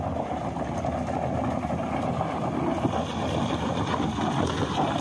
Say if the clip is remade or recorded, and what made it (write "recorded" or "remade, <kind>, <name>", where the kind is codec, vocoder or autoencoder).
recorded